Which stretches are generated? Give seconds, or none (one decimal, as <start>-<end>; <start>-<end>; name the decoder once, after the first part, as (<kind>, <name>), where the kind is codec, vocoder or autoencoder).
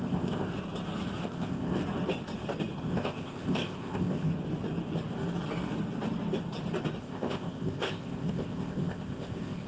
0.0-0.5 (codec, ZipCodec); 1.2-1.8; 2.8-4.3; 7.0-9.7